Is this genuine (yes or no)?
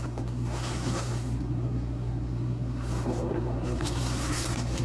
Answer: no